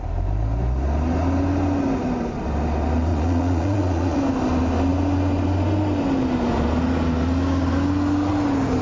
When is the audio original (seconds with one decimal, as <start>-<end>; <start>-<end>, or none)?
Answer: 0.0-3.1; 4.2-8.8